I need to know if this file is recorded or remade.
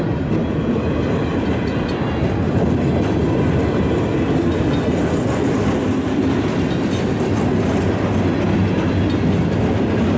recorded